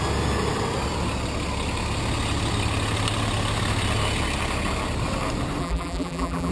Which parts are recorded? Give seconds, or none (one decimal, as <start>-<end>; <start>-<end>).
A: 0.0-5.6